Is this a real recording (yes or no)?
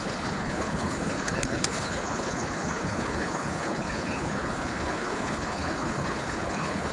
no